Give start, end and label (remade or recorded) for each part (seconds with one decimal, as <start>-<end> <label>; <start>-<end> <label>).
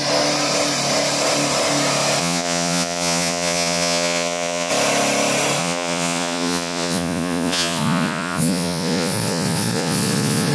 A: 0.0-2.2 recorded; 2.2-4.7 remade; 4.7-5.6 recorded; 5.6-10.5 remade